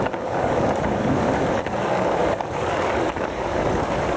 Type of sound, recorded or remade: remade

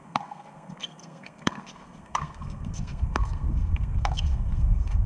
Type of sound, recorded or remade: remade